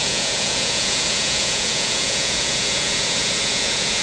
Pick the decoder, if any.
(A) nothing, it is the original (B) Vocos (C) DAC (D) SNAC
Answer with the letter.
B